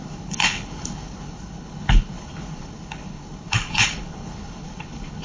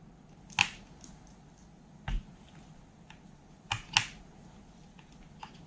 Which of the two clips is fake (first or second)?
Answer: first